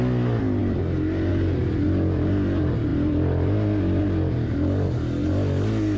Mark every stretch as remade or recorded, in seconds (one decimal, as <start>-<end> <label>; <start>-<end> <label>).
0.0-6.0 recorded